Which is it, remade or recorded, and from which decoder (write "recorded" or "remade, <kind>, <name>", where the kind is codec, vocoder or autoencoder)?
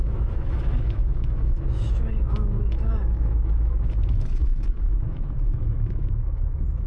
remade, autoencoder, DAC-VAE